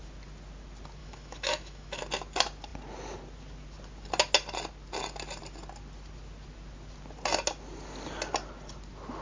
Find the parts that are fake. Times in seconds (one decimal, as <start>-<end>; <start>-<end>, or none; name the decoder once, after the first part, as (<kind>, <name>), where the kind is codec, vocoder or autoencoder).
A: 1.0-2.0 (autoencoder, DAC-VAE)